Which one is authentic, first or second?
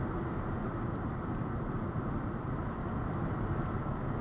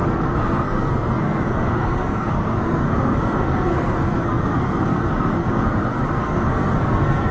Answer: first